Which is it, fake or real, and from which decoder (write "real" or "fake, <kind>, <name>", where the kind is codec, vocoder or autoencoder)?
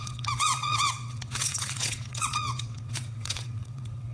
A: fake, vocoder, WaveNeXt